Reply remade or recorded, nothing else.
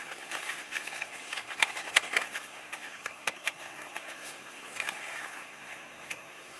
remade